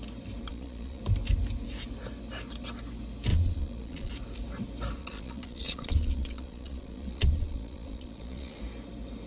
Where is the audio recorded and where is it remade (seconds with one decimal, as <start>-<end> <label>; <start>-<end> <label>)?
0.0-0.5 recorded; 0.5-1.0 remade; 1.0-3.3 recorded; 3.3-4.1 remade; 4.1-5.0 recorded; 5.0-8.6 remade; 8.6-9.3 recorded